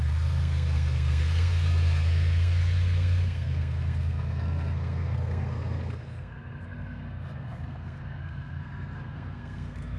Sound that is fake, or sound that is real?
fake